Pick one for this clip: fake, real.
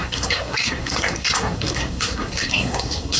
fake